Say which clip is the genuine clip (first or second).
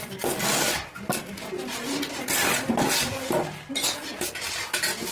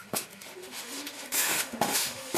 first